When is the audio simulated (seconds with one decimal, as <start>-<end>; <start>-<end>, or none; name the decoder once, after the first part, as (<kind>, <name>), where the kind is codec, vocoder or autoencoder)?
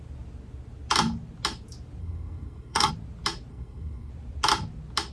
2.0-2.9 (codec, SNAC); 3.5-4.1